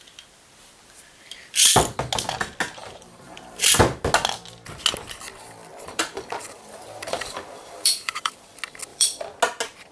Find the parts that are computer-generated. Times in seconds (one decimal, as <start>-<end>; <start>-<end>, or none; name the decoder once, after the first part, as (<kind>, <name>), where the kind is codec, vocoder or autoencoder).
2.8-3.8 (vocoder, BigVGAN v2); 5.7-8.5; 8.9-9.4